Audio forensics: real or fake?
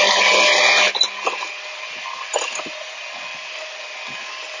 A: real